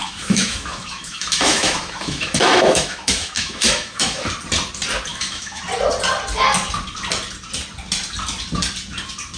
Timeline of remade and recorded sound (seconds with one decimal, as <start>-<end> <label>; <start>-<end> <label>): 0.0-4.2 remade; 4.2-5.1 recorded; 5.1-5.6 remade; 5.6-9.4 recorded